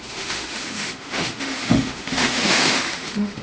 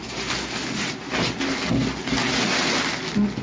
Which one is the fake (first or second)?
first